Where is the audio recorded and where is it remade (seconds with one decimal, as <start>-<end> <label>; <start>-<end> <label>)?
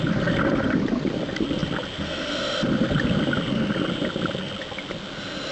0.0-5.5 recorded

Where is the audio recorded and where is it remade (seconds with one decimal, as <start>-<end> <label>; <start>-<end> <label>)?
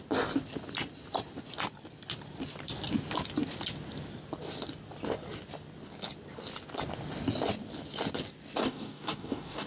0.0-8.6 recorded; 8.6-9.7 remade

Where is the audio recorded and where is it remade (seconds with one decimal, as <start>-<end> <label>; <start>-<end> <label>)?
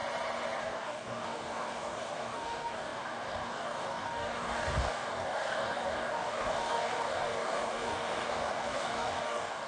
0.0-0.6 recorded; 0.6-9.7 remade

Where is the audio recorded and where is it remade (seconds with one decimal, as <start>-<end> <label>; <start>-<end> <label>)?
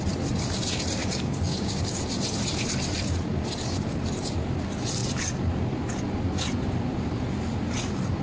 0.0-1.0 recorded; 1.0-1.8 remade; 1.8-8.2 recorded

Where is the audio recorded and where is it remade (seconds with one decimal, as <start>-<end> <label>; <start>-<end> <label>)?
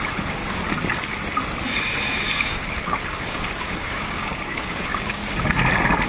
0.0-0.4 remade; 0.4-2.4 recorded; 2.4-5.2 remade; 5.2-6.1 recorded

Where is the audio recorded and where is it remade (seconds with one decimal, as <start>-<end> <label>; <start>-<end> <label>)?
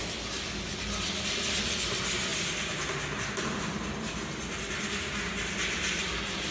0.0-6.5 recorded